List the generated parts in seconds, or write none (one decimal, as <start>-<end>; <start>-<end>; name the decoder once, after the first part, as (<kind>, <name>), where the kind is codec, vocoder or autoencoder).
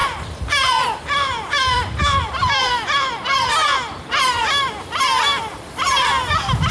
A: 0.0-2.0 (vocoder, BigVGAN v2); 2.6-6.1